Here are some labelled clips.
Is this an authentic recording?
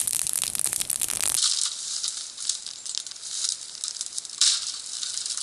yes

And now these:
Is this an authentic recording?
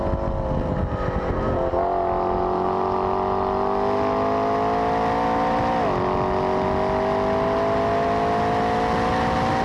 yes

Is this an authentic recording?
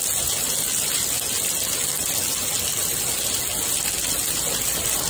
yes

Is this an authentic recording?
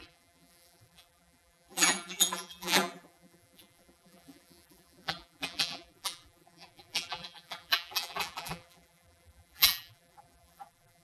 no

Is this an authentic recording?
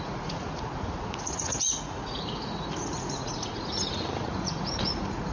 no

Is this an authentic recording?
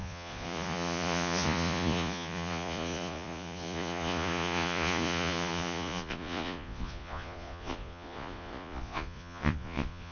no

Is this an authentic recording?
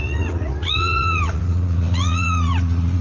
no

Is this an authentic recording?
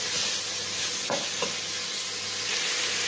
yes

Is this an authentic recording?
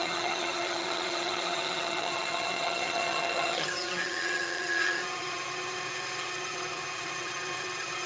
no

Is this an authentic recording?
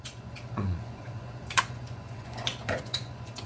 no